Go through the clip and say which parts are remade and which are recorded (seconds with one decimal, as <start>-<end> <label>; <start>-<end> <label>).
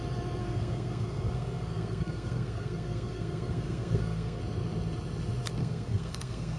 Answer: 0.0-0.4 recorded; 0.4-4.4 remade; 4.4-5.6 recorded; 5.6-6.6 remade